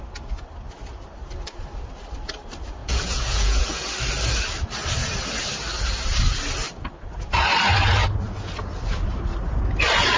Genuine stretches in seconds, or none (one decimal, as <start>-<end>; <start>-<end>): 0.0-2.8; 3.7-10.2